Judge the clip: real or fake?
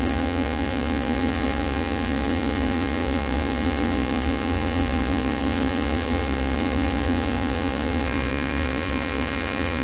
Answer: fake